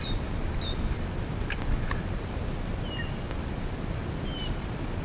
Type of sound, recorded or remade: recorded